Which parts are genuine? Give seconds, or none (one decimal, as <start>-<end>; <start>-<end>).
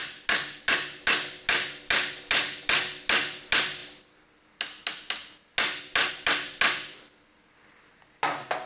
0.0-8.7